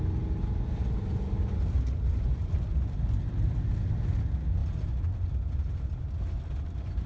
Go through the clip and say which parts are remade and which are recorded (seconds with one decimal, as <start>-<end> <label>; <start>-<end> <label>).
0.0-7.1 recorded